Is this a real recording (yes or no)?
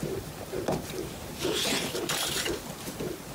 no